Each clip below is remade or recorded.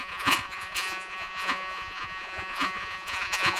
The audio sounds remade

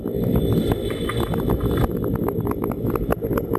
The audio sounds recorded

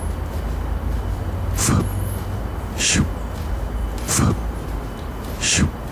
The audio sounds recorded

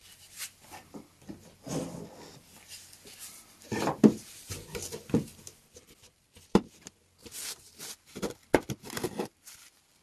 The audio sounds remade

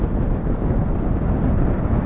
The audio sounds recorded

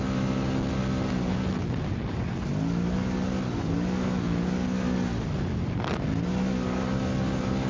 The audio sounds recorded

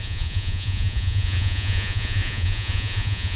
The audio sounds remade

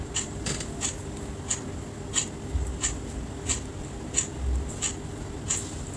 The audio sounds recorded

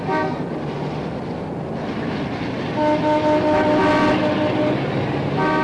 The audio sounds recorded